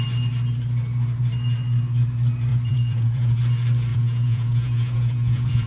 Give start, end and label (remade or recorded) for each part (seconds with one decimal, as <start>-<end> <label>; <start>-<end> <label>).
0.0-2.5 recorded; 2.5-3.4 remade; 3.4-3.9 recorded; 3.9-5.7 remade